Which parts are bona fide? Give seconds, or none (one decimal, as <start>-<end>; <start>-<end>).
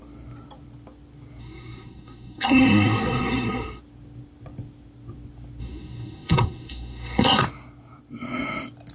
0.0-1.4; 3.8-5.6; 7.4-8.9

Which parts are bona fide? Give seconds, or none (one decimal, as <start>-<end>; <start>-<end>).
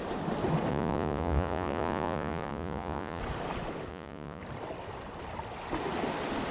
0.0-0.7; 3.2-3.9; 4.4-6.5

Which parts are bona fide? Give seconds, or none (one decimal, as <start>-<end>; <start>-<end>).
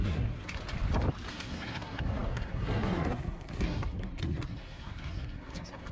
0.6-1.3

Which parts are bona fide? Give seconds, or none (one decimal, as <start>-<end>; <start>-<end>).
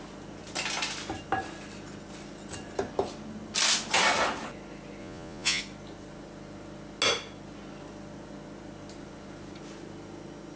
0.0-5.0; 5.6-10.6